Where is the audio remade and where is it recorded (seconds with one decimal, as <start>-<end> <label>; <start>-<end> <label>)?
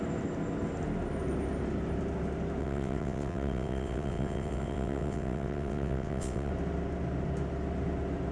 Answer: 0.0-2.6 recorded; 2.6-6.5 remade; 6.5-8.3 recorded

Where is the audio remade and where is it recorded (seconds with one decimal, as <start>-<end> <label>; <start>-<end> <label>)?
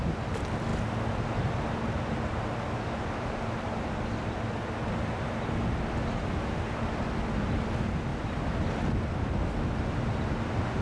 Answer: 0.0-10.8 recorded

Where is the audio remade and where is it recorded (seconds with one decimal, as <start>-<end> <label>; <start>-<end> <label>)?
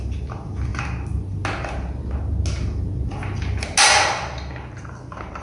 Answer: 0.0-5.4 recorded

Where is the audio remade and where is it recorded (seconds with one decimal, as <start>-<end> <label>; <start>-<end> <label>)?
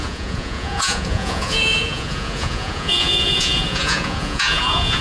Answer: 0.0-5.0 remade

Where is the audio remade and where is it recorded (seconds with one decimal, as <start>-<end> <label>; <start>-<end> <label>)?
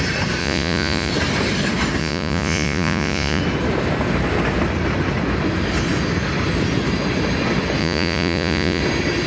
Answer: 0.0-0.4 recorded; 0.4-1.1 remade; 1.1-2.0 recorded; 2.0-3.4 remade; 3.4-7.8 recorded; 7.8-8.8 remade; 8.8-9.3 recorded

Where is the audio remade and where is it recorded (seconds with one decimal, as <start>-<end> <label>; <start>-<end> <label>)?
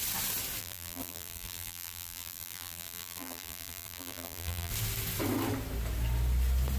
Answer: 0.0-0.6 recorded; 0.6-4.7 remade; 4.7-6.8 recorded